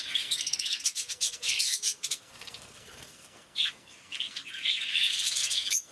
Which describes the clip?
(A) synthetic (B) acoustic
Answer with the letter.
A